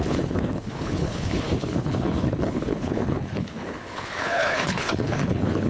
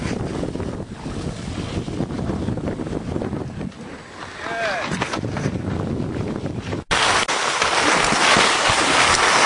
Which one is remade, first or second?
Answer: first